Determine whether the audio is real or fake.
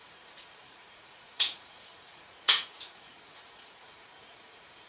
fake